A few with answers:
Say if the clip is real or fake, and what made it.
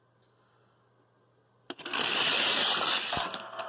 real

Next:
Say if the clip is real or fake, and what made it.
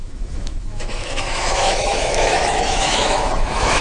fake, autoencoder, DAC-VAE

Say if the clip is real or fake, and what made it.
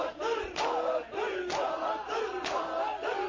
fake, vocoder, BigVGAN v2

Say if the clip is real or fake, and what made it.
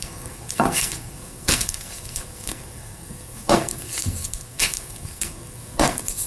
fake, codec, SNAC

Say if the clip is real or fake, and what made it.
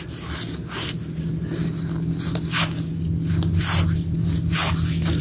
real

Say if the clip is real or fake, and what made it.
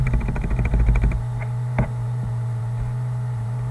fake, vocoder, BigVGAN v2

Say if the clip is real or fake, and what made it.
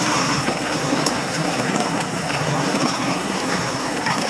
fake, codec, SNAC